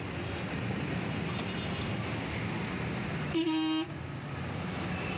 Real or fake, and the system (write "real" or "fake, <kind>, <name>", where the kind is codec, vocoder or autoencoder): real